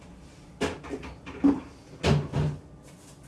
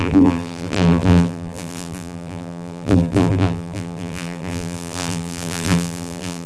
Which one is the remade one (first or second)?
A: second